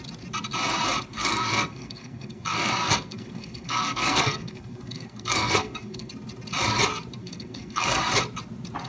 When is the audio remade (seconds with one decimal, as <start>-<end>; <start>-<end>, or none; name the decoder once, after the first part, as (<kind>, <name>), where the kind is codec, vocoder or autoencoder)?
1.1-6.1 (codec, SNAC); 7.2-8.0